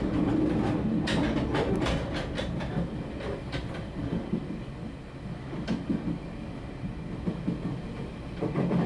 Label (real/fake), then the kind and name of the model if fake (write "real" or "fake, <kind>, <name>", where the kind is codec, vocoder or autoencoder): real